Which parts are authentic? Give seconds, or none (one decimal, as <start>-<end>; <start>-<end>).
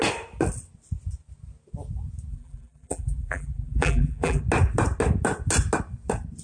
0.0-2.3; 4.4-6.4